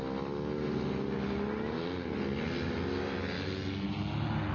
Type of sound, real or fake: real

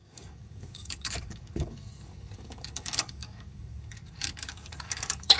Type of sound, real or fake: fake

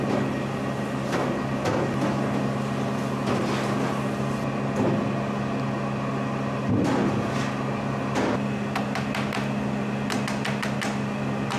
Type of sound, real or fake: real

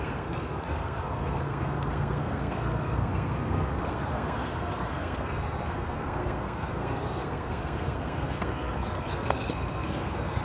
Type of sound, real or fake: fake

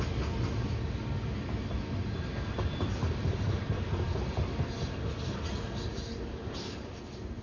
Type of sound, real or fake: real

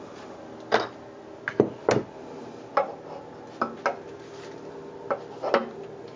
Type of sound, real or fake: real